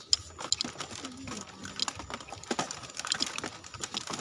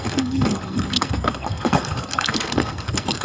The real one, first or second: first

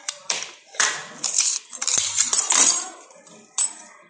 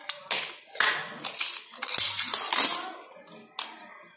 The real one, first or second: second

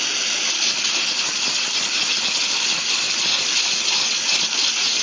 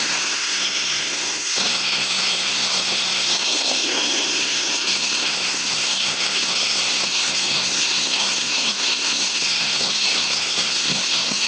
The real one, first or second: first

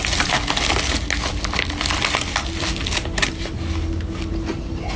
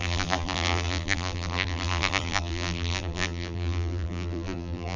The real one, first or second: first